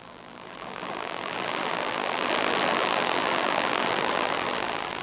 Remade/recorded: remade